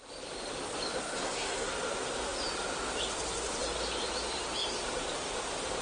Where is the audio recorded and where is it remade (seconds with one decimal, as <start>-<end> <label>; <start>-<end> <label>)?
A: 0.0-1.0 recorded; 1.0-1.7 remade; 1.7-5.8 recorded